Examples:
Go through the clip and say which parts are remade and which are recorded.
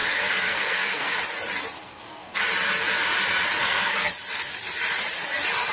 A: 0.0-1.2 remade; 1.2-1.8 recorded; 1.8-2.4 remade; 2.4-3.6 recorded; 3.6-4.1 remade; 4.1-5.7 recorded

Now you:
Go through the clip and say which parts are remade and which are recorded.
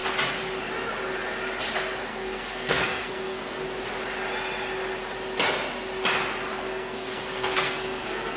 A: 0.0-2.1 recorded; 2.1-3.6 remade; 3.6-6.5 recorded; 6.5-8.4 remade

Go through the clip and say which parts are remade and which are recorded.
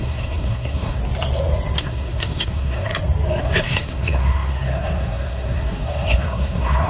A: 0.0-1.0 remade; 1.0-1.8 recorded; 1.8-2.9 remade; 2.9-3.4 recorded; 3.4-6.9 remade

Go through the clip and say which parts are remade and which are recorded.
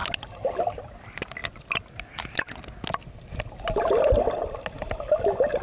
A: 0.0-5.6 recorded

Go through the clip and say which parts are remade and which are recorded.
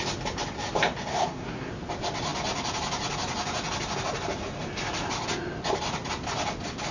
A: 0.0-1.1 recorded; 1.1-1.7 remade; 1.7-6.9 recorded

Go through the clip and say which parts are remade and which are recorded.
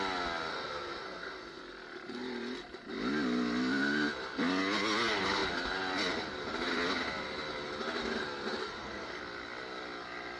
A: 0.0-0.5 recorded; 0.5-1.6 remade; 1.6-8.6 recorded; 8.6-9.2 remade; 9.2-10.4 recorded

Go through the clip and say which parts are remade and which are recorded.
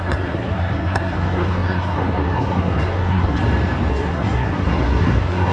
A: 0.0-3.4 remade; 3.4-3.9 recorded; 3.9-5.5 remade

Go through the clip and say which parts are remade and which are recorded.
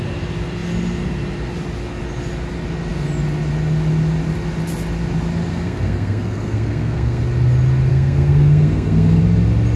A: 0.0-5.5 recorded; 5.5-7.2 remade; 7.2-7.9 recorded; 7.9-9.2 remade; 9.2-9.8 recorded